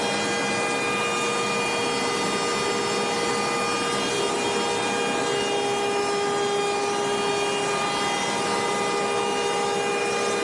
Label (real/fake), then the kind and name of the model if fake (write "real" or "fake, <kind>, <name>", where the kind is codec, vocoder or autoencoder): real